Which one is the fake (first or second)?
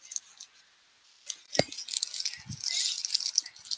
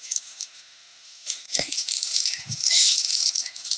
second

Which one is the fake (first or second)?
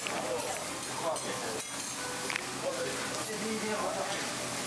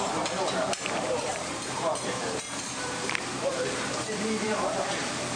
second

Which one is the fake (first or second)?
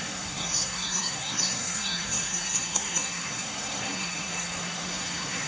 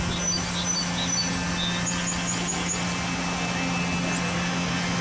first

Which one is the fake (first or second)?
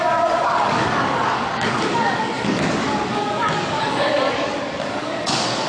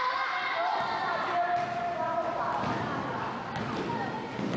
first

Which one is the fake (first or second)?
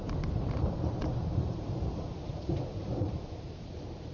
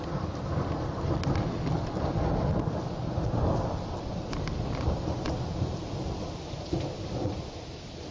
first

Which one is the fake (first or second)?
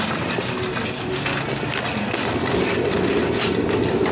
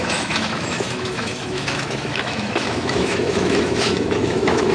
second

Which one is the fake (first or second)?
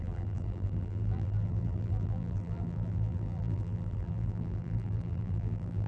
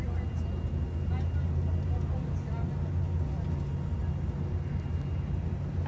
first